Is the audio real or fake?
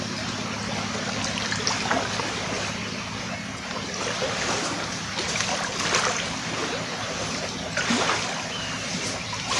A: real